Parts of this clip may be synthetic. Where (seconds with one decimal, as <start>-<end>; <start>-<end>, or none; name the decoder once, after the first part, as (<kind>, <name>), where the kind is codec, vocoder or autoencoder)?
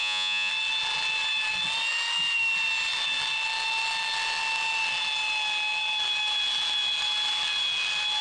0.0-0.5 (vocoder, Vocos)